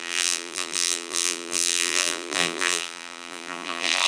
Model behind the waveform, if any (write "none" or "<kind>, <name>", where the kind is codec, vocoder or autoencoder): vocoder, BigVGAN v2